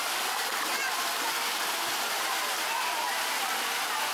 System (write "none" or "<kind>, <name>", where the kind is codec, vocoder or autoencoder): none